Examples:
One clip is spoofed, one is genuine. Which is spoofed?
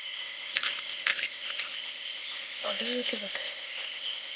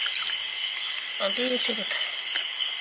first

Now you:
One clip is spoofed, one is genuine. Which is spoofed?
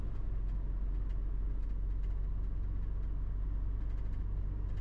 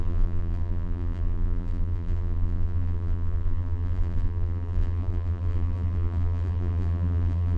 second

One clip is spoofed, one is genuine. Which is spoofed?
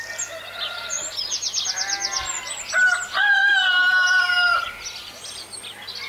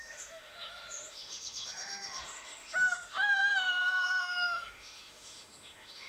second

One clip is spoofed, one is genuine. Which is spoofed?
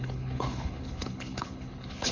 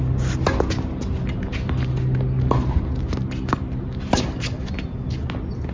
first